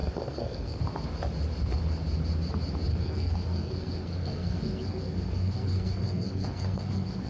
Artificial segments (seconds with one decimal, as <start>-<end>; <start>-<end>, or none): 0.0-0.8; 2.9-7.3